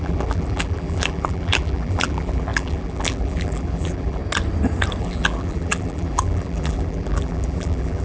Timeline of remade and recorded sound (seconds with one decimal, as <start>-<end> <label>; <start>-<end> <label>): 0.0-4.2 remade; 4.2-5.0 recorded; 5.0-8.0 remade

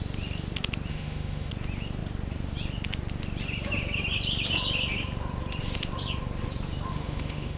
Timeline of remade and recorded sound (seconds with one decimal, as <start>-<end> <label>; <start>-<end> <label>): 0.0-0.9 recorded; 0.9-1.5 remade; 1.5-6.9 recorded; 6.9-7.6 remade

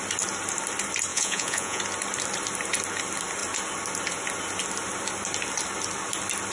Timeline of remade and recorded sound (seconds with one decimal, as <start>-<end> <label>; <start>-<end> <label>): 0.0-1.1 recorded; 1.1-1.8 remade; 1.8-6.5 recorded

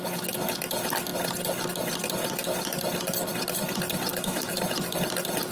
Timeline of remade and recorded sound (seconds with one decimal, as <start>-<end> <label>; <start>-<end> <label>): 0.0-4.1 recorded; 4.1-4.6 remade; 4.6-5.5 recorded

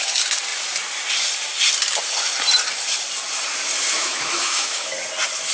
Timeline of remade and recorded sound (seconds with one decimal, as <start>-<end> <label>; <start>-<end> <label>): 0.0-4.0 recorded; 4.0-4.9 remade; 4.9-5.5 recorded

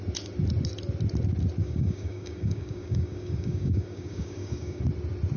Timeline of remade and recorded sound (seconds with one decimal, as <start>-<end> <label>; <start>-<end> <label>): 0.0-1.6 recorded; 1.6-4.8 remade; 4.8-5.4 recorded

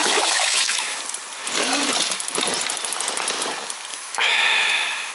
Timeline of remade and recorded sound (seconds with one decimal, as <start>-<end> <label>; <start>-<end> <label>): 0.0-1.0 remade; 1.0-3.9 recorded; 3.9-5.1 remade